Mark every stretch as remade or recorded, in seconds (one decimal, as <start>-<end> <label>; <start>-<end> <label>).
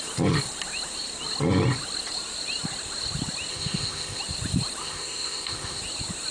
0.0-3.5 recorded; 3.5-4.2 remade; 4.2-4.8 recorded; 4.8-5.8 remade; 5.8-6.3 recorded